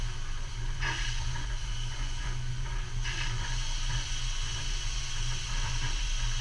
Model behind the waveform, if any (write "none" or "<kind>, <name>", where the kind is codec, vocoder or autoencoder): vocoder, Vocos